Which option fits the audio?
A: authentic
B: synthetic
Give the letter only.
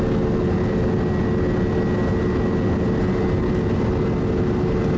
A